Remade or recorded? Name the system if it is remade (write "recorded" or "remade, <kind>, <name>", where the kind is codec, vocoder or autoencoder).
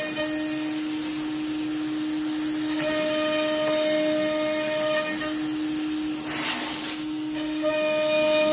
recorded